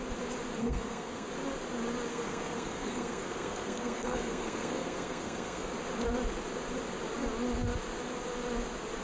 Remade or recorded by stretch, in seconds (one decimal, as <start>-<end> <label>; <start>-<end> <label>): 0.0-0.6 recorded; 0.6-1.3 remade; 1.3-2.1 recorded; 2.1-5.7 remade; 5.7-9.0 recorded